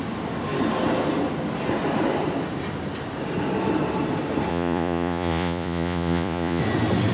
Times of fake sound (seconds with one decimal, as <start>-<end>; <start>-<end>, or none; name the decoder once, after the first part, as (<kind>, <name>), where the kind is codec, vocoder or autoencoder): 4.5-6.6 (vocoder, Vocos)